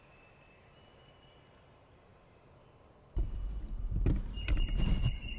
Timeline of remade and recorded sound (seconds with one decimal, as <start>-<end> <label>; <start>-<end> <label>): 0.0-5.4 recorded